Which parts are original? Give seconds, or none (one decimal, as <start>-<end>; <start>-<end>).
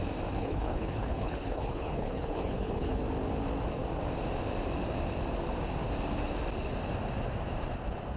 0.0-0.4; 3.0-8.2